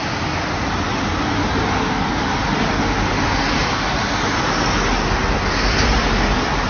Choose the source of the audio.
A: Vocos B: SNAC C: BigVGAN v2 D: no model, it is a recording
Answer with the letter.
D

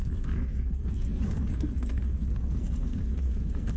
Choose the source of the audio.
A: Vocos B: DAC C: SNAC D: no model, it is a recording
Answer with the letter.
C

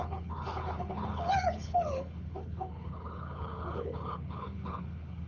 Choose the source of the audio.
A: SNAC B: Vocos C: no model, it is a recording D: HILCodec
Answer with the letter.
D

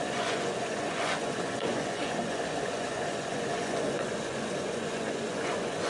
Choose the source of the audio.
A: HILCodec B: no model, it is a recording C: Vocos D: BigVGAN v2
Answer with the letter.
C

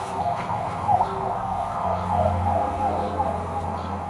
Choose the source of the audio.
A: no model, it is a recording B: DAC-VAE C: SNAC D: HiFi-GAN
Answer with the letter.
C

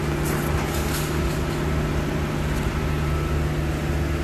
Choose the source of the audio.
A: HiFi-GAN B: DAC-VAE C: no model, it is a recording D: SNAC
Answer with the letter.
C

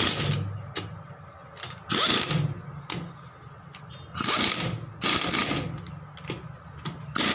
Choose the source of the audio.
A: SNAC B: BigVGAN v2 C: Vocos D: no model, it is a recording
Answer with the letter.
D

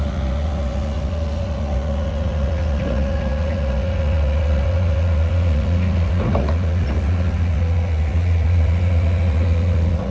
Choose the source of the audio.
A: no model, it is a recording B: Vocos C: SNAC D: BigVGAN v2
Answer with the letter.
B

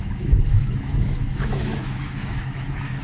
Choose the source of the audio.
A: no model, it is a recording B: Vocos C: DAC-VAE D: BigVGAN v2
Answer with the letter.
C